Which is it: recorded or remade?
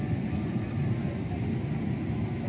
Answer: recorded